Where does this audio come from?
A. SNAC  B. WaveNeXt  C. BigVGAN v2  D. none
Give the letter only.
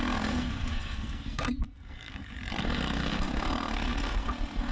A